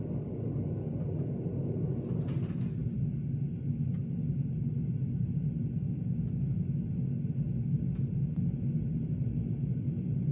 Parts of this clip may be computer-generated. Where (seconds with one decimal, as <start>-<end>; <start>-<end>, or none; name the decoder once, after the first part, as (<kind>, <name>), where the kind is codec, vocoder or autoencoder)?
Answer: 2.8-3.7 (vocoder, BigVGAN v2)